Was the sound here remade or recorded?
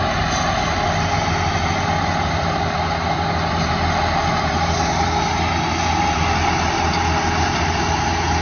recorded